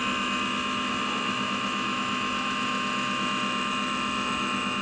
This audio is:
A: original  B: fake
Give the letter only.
B